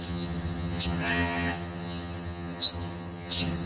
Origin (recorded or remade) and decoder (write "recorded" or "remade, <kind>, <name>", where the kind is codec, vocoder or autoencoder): remade, vocoder, HiFi-GAN